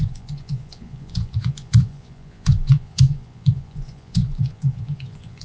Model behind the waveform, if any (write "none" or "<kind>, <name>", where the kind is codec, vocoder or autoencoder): vocoder, Vocos